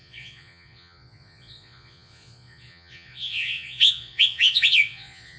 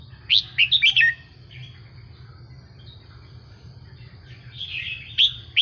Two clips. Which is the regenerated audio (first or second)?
first